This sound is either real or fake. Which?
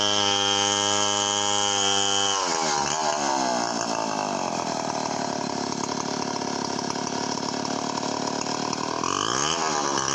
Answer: real